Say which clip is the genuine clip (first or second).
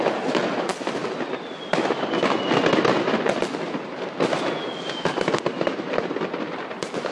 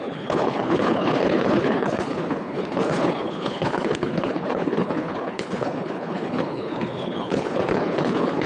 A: first